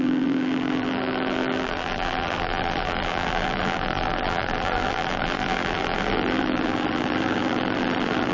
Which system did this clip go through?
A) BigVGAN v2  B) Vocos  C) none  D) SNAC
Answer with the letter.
A